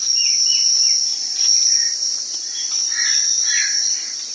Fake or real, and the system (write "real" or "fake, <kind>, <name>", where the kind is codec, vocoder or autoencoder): real